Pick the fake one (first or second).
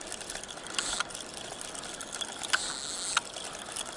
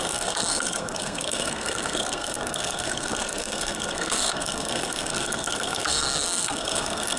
second